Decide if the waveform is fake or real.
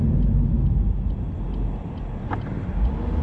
real